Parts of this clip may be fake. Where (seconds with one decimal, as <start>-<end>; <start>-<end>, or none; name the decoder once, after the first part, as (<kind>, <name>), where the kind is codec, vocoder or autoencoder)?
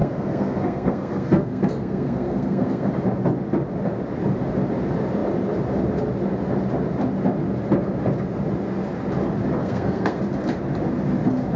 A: 0.0-2.9 (codec, SNAC); 9.6-10.2